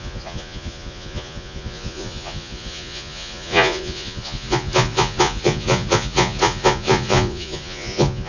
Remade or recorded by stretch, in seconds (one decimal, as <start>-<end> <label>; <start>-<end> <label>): 0.0-8.3 remade

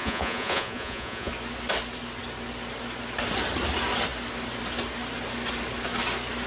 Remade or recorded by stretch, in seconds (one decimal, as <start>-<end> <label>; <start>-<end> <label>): 0.0-1.3 remade; 1.3-6.5 recorded

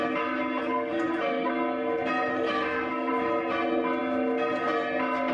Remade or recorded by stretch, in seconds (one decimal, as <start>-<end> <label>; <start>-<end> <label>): 0.0-0.6 recorded; 0.6-1.5 remade; 1.5-2.3 recorded; 2.3-3.1 remade; 3.1-5.3 recorded

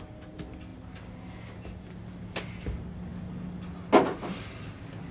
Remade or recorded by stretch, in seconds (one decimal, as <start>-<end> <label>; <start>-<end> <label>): 0.0-5.1 recorded

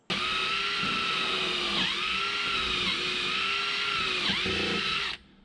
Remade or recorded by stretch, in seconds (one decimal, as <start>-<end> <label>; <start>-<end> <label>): 0.0-5.4 recorded

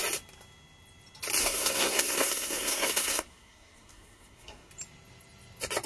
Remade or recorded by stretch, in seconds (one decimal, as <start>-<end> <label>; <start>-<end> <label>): 0.0-1.4 recorded; 1.4-4.7 remade; 4.7-5.9 recorded

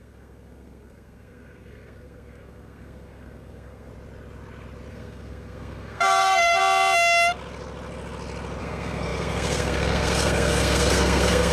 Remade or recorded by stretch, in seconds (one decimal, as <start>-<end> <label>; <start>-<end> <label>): 0.0-3.9 remade; 3.9-4.9 recorded; 4.9-6.6 remade; 6.6-8.6 recorded; 8.6-11.5 remade

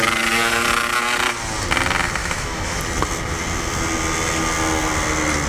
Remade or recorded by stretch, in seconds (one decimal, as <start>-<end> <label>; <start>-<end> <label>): 0.0-2.2 recorded; 2.2-2.8 remade; 2.8-5.5 recorded